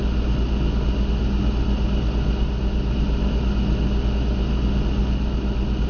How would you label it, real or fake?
real